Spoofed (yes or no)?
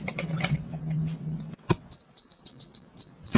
yes